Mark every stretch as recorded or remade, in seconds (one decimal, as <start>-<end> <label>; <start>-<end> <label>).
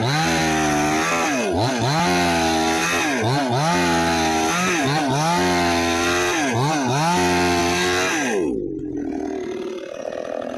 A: 0.0-10.6 recorded